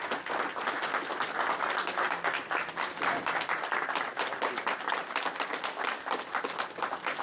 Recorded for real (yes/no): yes